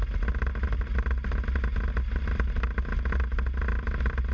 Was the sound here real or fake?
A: real